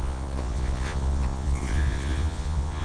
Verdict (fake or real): fake